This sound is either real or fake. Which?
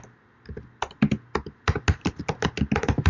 real